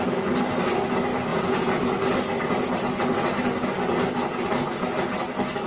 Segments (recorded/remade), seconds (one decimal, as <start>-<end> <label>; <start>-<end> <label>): 0.0-1.3 recorded; 1.3-1.9 remade; 1.9-5.7 recorded